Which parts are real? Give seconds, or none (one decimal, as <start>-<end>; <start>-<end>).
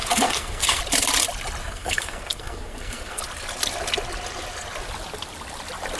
0.8-1.6; 3.2-6.0